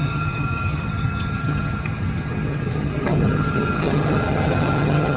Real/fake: fake